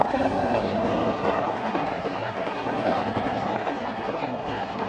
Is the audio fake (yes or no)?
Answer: yes